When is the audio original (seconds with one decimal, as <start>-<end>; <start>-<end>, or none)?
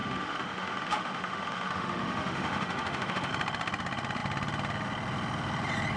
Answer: 3.3-6.0